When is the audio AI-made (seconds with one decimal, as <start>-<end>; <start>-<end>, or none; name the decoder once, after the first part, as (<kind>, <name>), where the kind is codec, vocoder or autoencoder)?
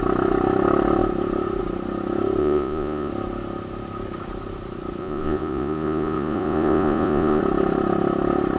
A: 2.4-3.1 (vocoder, Vocos); 5.0-7.4